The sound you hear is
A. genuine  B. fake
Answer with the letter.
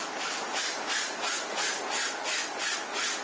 A